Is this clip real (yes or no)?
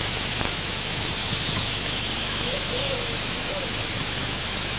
no